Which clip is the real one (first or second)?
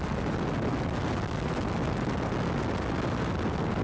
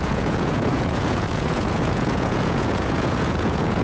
first